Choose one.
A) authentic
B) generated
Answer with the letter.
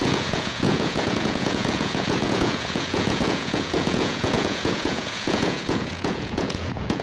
B